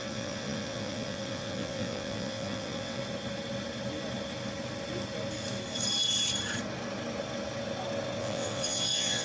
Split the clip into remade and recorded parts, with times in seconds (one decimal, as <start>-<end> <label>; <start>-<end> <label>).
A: 0.0-3.0 remade; 3.0-8.2 recorded; 8.2-9.2 remade